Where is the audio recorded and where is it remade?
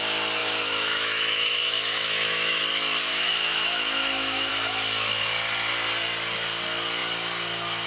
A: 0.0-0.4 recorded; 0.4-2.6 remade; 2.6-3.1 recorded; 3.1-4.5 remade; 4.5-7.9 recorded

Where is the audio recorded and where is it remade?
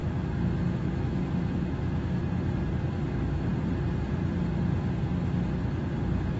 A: 0.0-2.2 remade; 2.2-2.9 recorded; 2.9-3.5 remade; 3.5-6.0 recorded; 6.0-6.4 remade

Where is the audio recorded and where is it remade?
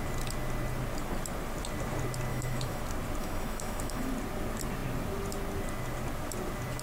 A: 0.0-2.3 recorded; 2.3-2.8 remade; 2.8-3.2 recorded; 3.2-4.1 remade; 4.1-6.8 recorded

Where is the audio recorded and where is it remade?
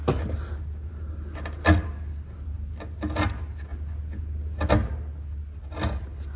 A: 0.0-6.4 recorded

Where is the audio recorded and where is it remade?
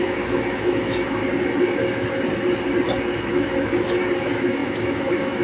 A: 0.0-1.2 remade; 1.2-3.3 recorded; 3.3-5.4 remade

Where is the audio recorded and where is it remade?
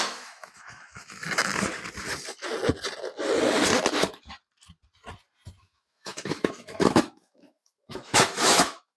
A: 0.0-1.2 remade; 1.2-5.6 recorded; 5.6-9.0 remade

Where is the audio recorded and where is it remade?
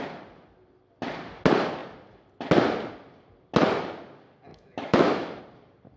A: 0.0-4.5 recorded; 4.5-5.4 remade; 5.4-6.0 recorded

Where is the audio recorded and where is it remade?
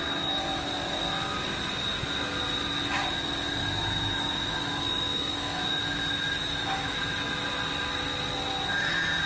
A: 0.0-3.6 recorded; 3.6-7.3 remade; 7.3-9.3 recorded